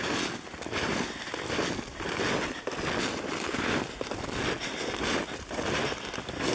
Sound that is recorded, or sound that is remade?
recorded